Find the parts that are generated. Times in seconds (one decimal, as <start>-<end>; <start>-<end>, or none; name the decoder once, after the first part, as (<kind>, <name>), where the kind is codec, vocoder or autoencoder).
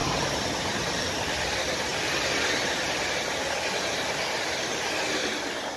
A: none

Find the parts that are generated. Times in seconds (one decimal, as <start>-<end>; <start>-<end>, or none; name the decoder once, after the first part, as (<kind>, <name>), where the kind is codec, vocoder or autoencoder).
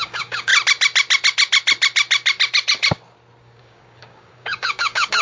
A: 0.0-0.5 (codec, DAC); 3.4-5.2